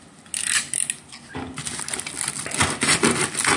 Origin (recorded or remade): recorded